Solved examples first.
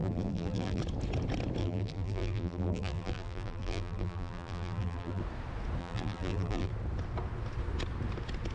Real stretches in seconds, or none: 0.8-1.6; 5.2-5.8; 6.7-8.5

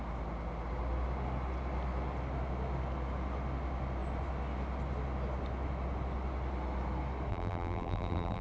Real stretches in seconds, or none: 0.0-7.3

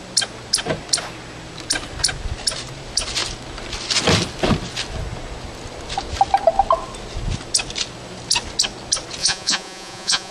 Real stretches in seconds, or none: 0.0-9.2

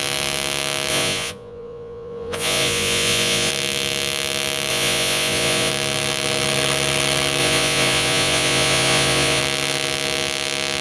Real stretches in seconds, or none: 0.0-0.9; 3.5-4.7; 5.7-7.4; 9.4-10.8

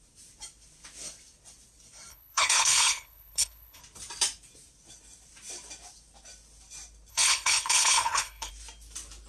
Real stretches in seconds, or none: 0.0-2.1; 3.8-7.1; 8.5-9.3